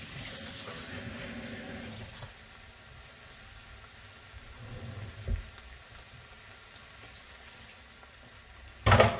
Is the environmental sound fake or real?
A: real